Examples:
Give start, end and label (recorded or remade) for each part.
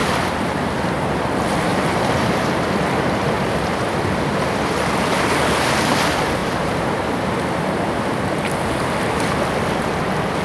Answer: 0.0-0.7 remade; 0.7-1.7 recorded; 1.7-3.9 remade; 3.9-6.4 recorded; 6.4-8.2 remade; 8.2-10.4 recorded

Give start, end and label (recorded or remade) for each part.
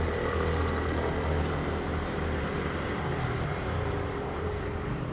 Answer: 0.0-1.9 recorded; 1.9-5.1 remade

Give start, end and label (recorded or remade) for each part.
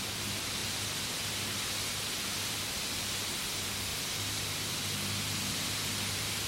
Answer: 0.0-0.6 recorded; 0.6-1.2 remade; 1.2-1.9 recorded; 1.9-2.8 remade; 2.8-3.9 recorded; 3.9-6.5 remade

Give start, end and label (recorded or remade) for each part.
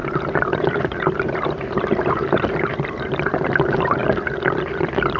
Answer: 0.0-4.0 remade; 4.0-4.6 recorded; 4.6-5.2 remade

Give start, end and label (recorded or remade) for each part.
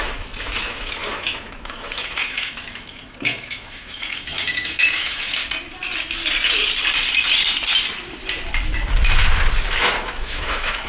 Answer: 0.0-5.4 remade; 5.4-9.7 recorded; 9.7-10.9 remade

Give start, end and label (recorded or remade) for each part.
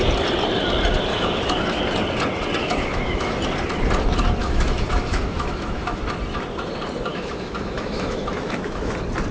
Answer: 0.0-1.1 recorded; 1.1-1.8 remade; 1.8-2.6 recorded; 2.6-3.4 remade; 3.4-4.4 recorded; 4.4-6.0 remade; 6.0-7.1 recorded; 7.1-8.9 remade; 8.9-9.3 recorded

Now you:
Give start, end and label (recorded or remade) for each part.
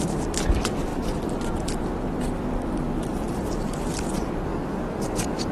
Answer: 0.0-4.5 recorded; 4.5-5.5 remade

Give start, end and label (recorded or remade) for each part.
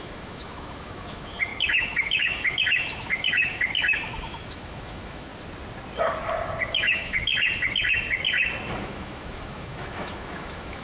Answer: 0.0-5.3 remade; 5.3-6.7 recorded; 6.7-7.3 remade; 7.3-8.8 recorded; 8.8-10.8 remade